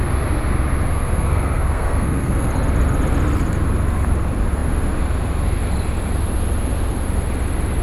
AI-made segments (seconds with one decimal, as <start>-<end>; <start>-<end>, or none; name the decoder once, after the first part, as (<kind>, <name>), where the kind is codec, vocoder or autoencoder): 0.9-2.5 (codec, SNAC)